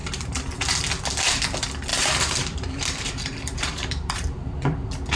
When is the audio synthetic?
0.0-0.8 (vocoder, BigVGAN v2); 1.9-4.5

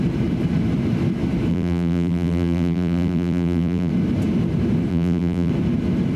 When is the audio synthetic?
1.5-3.9 (vocoder, BigVGAN v2); 4.9-5.5

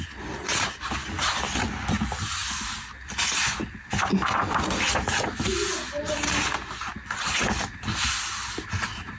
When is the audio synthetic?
none

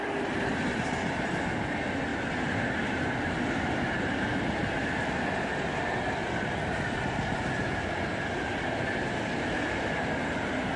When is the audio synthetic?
none

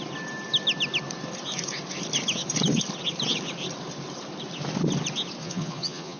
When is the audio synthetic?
5.4-6.2 (vocoder, Vocos)

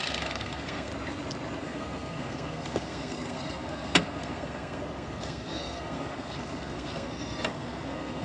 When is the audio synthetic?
0.0-0.9 (codec, SNAC); 1.6-8.2